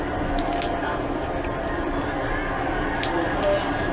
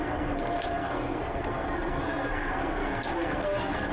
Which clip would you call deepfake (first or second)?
second